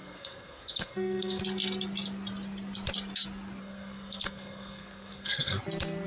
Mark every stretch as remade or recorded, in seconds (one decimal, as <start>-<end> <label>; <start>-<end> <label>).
0.0-1.4 remade; 1.4-3.6 recorded; 3.6-5.6 remade; 5.6-6.1 recorded